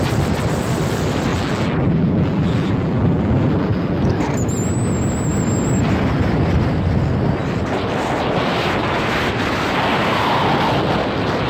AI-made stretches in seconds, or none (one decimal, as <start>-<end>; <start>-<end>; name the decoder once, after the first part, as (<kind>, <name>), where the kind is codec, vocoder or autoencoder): 1.3-4.0 (vocoder, BigVGAN v2)